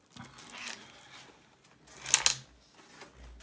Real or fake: real